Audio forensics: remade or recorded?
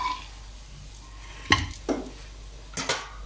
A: recorded